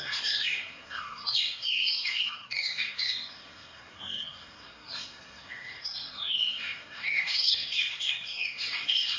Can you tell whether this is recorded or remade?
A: remade